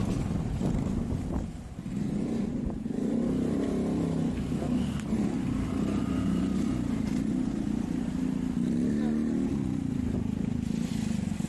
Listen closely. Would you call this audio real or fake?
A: real